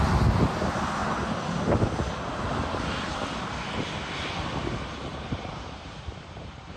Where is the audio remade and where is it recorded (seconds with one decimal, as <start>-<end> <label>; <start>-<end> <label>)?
0.0-5.1 recorded; 5.1-6.8 remade